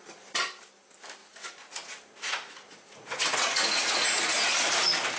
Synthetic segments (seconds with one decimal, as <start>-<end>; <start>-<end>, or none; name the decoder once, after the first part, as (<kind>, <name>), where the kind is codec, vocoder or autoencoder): 1.2-4.3 (vocoder, Vocos)